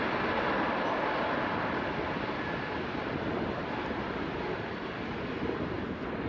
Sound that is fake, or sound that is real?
real